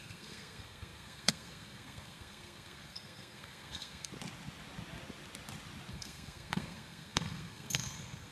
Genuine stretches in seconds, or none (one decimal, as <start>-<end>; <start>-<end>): 4.1-5.9